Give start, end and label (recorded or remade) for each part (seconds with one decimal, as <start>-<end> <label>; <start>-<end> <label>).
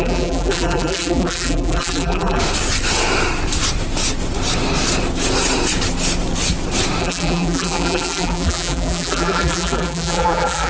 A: 0.0-2.4 remade; 2.4-7.0 recorded; 7.0-10.7 remade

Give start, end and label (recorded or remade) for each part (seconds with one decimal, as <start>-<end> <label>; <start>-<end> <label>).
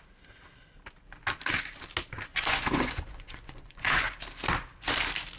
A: 0.0-2.3 recorded; 2.3-4.1 remade; 4.1-5.4 recorded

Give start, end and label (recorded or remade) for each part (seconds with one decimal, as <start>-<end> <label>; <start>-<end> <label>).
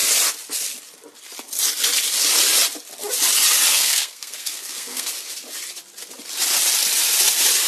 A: 0.0-3.7 recorded; 3.7-5.1 remade; 5.1-7.7 recorded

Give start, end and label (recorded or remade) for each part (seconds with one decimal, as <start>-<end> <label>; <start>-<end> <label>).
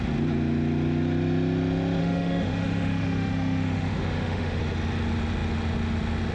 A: 0.0-2.0 recorded; 2.0-4.6 remade; 4.6-6.3 recorded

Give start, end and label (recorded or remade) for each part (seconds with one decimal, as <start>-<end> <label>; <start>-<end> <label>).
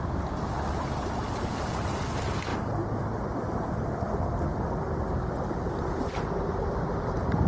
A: 0.0-7.5 recorded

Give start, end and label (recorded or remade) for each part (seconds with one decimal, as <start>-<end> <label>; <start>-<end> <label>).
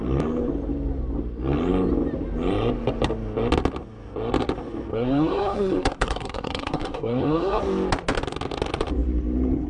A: 0.0-4.9 recorded; 4.9-7.6 remade; 7.6-9.7 recorded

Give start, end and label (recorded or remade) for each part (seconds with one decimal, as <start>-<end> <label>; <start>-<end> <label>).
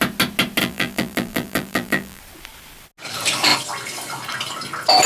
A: 0.0-0.6 recorded; 0.6-2.2 remade; 2.2-5.1 recorded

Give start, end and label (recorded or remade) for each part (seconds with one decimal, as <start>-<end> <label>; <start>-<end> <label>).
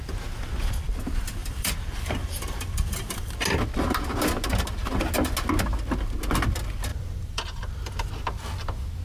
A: 0.0-1.4 recorded; 1.4-3.3 remade; 3.3-6.9 recorded; 6.9-8.1 remade; 8.1-9.0 recorded